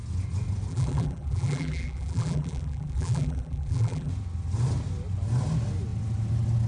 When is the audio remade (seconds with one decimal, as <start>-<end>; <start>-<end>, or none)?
0.7-4.1